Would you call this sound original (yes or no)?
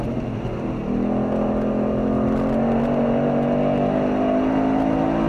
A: yes